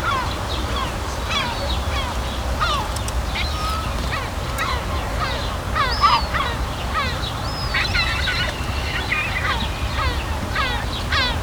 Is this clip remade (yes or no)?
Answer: no